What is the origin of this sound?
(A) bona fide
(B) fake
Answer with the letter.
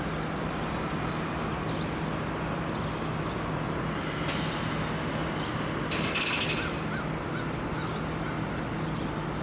A